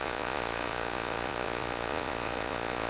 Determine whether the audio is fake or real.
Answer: fake